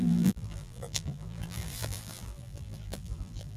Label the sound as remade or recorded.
remade